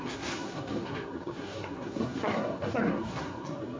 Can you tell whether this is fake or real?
fake